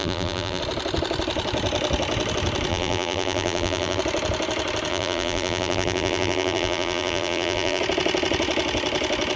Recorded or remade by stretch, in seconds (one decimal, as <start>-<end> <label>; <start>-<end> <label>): 0.0-0.6 remade; 0.6-2.7 recorded; 2.7-4.0 remade; 4.0-4.9 recorded; 4.9-7.8 remade; 7.8-9.4 recorded

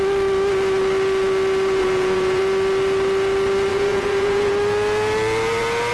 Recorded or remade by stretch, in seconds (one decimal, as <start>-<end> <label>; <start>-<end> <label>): 0.0-1.8 recorded; 1.8-2.4 remade; 2.4-3.7 recorded; 3.7-4.5 remade; 4.5-5.9 recorded

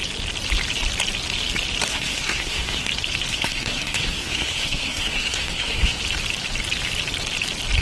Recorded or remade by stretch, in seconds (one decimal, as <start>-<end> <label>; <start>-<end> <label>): 0.0-1.9 recorded; 1.9-2.9 remade; 2.9-3.3 recorded; 3.3-6.0 remade; 6.0-7.8 recorded

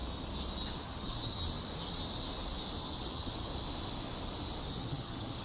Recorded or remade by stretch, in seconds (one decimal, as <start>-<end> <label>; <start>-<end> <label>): 0.0-0.7 recorded; 0.7-1.4 remade; 1.4-3.0 recorded; 3.0-3.5 remade; 3.5-4.7 recorded; 4.7-5.4 remade

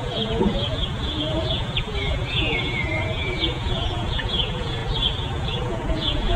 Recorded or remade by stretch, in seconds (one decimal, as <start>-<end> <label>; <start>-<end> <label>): 0.0-4.8 remade; 4.8-5.4 recorded; 5.4-6.4 remade